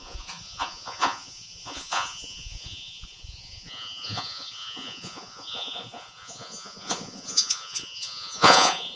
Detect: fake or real fake